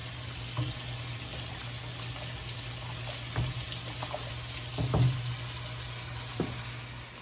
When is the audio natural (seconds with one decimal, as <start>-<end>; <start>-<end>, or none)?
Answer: 0.0-7.2